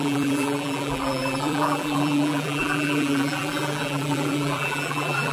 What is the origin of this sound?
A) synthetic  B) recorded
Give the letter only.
A